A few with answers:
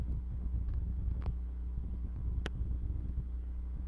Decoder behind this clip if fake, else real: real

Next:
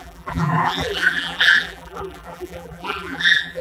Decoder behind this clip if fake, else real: fake, vocoder, BigVGAN v2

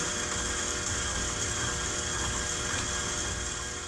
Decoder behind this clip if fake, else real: real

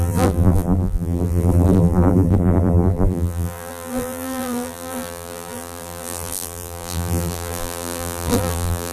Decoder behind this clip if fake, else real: fake, vocoder, BigVGAN v2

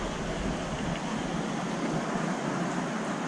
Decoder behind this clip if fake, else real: real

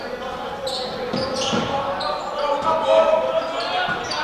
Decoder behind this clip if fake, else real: real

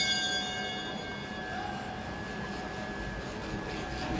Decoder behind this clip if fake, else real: real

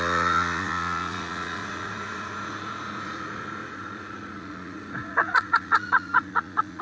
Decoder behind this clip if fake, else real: fake, vocoder, Vocos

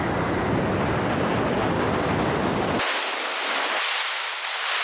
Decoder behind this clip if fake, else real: real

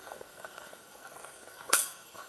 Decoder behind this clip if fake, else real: fake, codec, SNAC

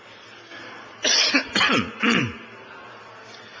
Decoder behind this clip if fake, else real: real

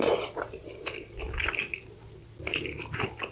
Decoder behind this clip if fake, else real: real